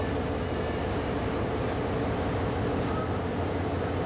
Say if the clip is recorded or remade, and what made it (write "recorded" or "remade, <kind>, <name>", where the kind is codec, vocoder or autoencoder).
recorded